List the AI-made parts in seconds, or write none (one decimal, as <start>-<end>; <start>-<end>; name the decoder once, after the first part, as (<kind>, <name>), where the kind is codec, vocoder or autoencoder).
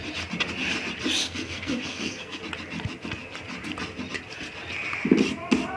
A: 1.2-2.4 (codec, SNAC)